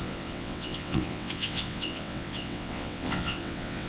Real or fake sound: fake